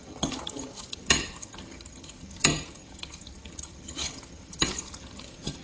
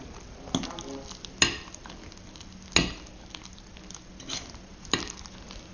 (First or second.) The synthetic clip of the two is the first